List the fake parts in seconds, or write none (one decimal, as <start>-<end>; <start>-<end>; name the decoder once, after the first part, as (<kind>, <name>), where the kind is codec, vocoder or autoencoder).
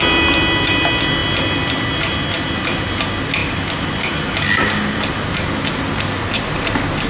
none